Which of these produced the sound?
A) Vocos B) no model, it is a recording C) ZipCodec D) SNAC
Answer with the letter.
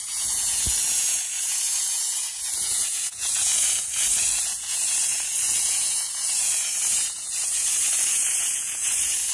A